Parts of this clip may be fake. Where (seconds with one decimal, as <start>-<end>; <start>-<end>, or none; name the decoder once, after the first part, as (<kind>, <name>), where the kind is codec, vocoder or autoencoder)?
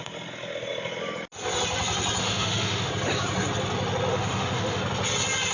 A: 2.2-2.9 (autoencoder, DAC-VAE); 4.1-4.8